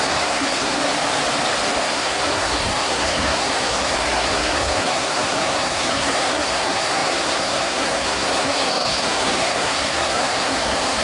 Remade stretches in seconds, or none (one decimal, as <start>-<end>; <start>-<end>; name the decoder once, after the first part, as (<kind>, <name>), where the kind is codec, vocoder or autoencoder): 0.0-0.8 (codec, SNAC); 1.8-11.0